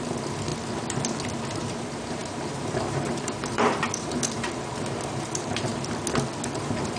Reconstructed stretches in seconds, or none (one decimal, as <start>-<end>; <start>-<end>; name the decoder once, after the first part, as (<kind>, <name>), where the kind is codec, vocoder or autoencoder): 0.0-0.5 (vocoder, BigVGAN v2); 1.7-5.7; 6.5-7.0